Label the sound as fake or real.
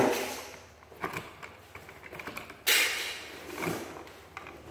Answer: real